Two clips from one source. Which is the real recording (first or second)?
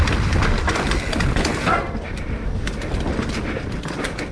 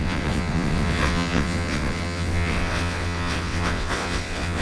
first